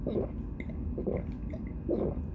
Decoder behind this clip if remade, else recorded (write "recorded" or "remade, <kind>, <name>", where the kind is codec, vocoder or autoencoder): recorded